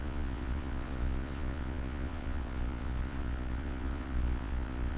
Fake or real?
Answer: fake